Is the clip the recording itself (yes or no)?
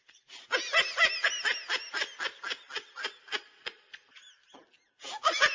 yes